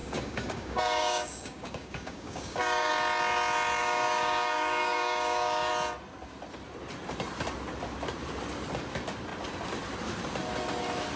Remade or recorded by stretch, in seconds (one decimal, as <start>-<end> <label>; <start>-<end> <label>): 0.0-2.9 remade; 2.9-3.8 recorded; 3.8-5.7 remade; 5.7-11.2 recorded